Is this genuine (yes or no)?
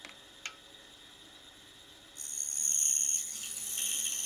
yes